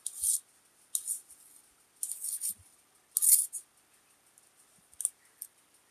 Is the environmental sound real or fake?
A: real